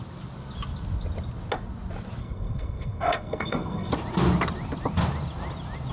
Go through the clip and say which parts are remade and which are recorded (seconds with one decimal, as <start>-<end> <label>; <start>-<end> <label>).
0.0-2.2 recorded; 2.2-3.9 remade; 3.9-5.9 recorded